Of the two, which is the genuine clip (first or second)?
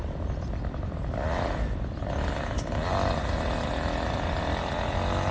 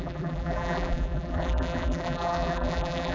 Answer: first